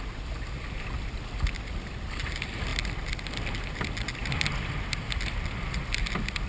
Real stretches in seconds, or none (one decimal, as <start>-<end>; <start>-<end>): 0.0-6.5